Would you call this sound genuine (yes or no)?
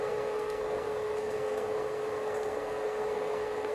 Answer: no